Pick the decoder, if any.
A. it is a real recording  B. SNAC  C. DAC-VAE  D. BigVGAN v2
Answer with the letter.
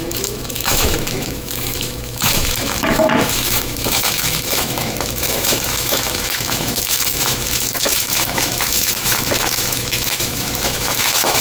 C